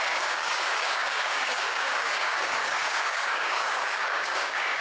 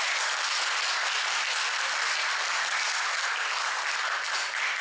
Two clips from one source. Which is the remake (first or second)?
first